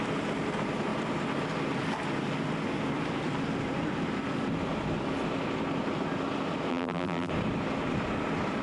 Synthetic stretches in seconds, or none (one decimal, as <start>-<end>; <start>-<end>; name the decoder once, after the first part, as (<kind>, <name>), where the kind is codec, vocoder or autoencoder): 6.7-7.3 (vocoder, BigVGAN v2)